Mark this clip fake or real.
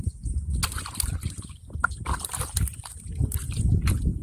real